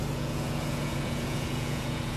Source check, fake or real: fake